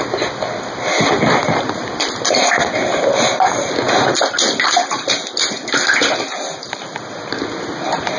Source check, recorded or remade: recorded